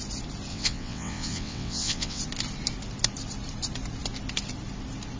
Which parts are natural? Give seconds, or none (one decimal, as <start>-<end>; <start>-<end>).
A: 0.0-0.5; 2.2-5.2